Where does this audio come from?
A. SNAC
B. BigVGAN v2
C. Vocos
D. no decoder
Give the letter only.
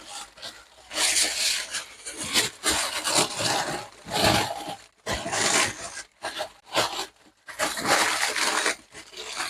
D